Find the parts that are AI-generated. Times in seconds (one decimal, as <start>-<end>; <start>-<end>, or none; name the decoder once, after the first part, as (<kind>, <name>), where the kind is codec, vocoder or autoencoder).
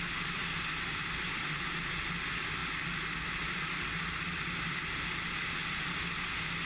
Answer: none